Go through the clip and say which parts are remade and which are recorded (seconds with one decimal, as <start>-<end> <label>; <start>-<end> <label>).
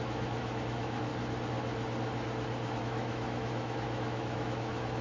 0.0-1.1 remade; 1.1-2.8 recorded; 2.8-5.0 remade